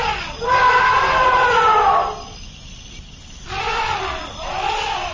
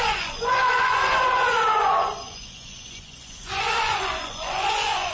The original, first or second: first